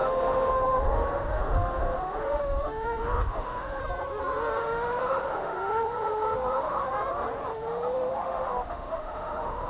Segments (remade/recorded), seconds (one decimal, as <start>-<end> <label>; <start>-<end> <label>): 0.0-3.8 remade; 3.8-4.6 recorded; 4.6-6.9 remade; 6.9-7.5 recorded; 7.5-9.7 remade